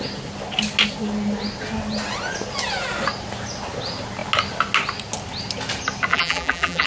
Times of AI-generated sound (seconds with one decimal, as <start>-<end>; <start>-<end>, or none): 6.1-6.9